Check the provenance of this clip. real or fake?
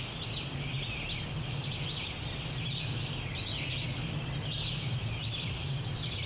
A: real